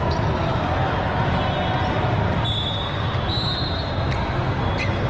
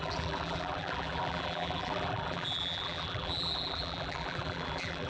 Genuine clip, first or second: first